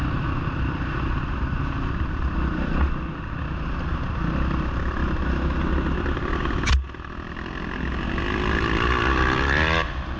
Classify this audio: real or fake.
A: real